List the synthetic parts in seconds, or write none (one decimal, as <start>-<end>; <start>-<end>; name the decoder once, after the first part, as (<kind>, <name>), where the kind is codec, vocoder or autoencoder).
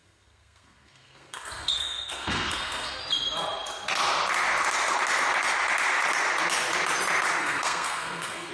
0.0-3.0 (codec, SNAC); 7.4-8.5